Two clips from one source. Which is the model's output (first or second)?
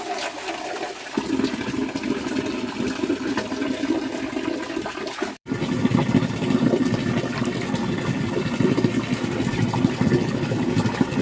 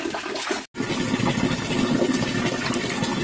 first